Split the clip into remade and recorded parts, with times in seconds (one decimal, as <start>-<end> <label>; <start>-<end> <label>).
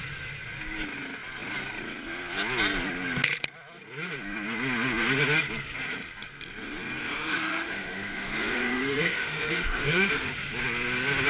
0.0-7.0 recorded; 7.0-10.3 remade; 10.3-11.3 recorded